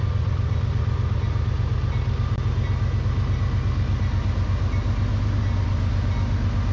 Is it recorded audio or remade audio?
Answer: recorded